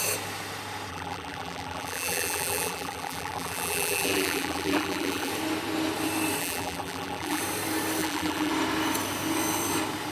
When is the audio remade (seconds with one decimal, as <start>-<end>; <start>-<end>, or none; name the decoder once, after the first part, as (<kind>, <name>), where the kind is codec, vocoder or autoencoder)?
0.9-5.3 (vocoder, BigVGAN v2); 6.4-7.4; 8.0-8.5